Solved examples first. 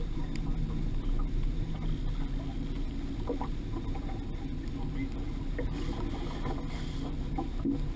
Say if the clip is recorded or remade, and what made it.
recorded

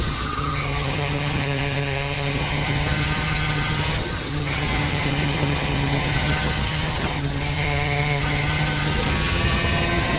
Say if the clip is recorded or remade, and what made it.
remade, vocoder, HiFi-GAN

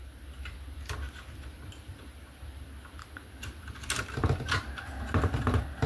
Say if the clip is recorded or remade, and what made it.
recorded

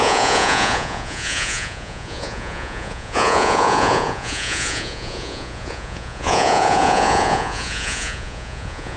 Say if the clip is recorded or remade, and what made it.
remade, vocoder, Vocos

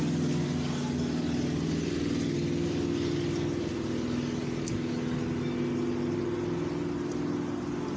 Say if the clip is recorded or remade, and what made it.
recorded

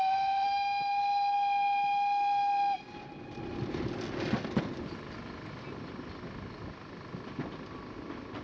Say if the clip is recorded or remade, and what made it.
recorded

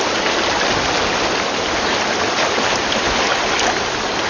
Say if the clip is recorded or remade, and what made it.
recorded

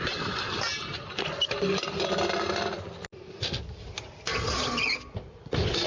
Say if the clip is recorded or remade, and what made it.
recorded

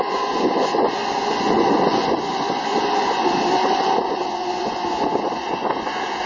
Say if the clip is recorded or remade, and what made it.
remade, vocoder, Vocos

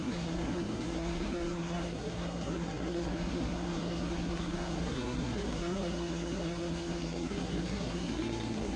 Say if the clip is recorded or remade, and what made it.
remade, codec, SNAC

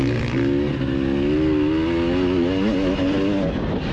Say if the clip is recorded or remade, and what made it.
recorded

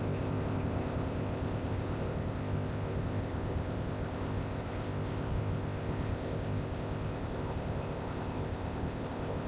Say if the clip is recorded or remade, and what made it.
remade, codec, ZipCodec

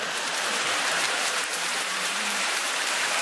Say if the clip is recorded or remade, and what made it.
remade, vocoder, BigVGAN v2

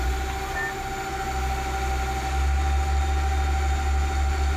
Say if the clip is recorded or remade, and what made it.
recorded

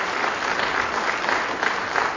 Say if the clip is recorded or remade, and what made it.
recorded